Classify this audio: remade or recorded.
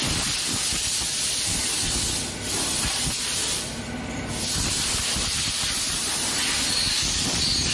recorded